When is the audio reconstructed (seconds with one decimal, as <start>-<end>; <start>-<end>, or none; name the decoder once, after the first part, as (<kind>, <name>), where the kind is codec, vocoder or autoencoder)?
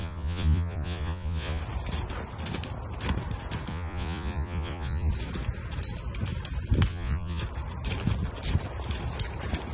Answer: 0.0-1.6 (vocoder, Vocos); 3.7-5.1; 6.9-7.4